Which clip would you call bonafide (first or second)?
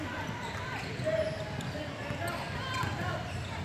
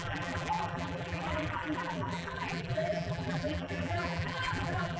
first